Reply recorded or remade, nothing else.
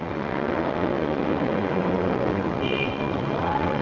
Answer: remade